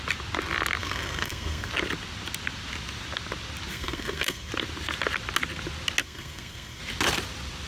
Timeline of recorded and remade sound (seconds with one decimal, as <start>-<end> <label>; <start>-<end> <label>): 0.0-0.8 recorded; 0.8-1.7 remade; 1.7-3.7 recorded; 3.7-4.5 remade; 4.5-6.0 recorded; 6.0-6.8 remade; 6.8-7.7 recorded